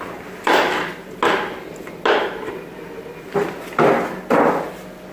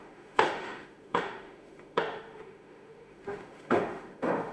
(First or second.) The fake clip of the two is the second